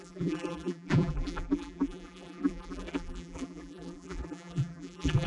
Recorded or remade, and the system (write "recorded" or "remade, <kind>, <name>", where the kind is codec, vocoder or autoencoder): remade, vocoder, BigVGAN v2